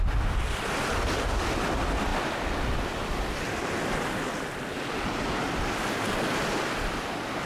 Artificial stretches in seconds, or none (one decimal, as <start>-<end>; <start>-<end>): none